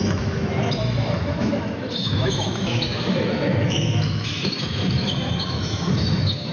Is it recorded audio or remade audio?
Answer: remade